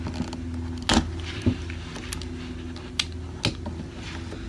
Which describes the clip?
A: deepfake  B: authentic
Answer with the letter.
B